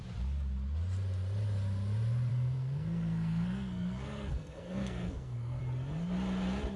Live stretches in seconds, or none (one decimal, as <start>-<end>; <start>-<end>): 0.0-2.3; 5.6-6.8